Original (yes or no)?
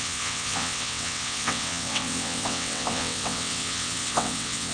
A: no